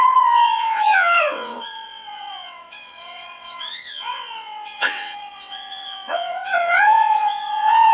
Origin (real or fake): fake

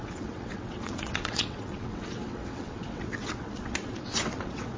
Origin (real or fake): fake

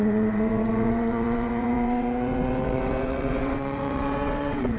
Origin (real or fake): fake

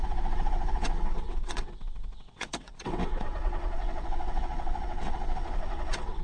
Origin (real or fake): fake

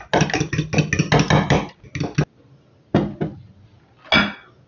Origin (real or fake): real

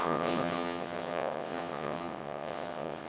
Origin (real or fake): fake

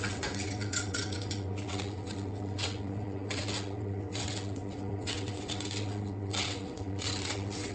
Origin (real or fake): fake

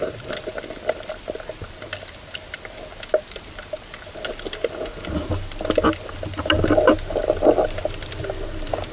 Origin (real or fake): real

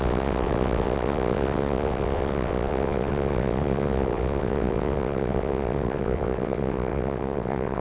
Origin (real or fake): fake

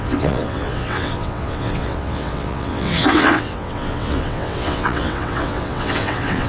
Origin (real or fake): fake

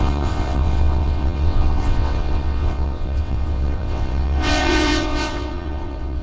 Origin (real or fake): fake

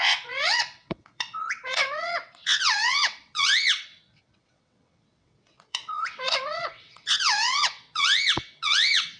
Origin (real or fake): fake